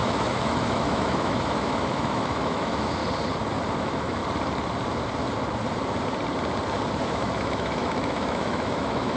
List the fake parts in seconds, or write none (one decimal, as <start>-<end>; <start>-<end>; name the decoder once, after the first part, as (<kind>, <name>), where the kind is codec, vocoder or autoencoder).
0.0-3.0 (autoencoder, DAC-VAE); 3.8-4.2; 7.0-9.2